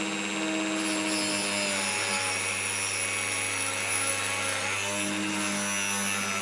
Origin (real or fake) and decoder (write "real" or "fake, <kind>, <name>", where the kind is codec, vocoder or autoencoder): real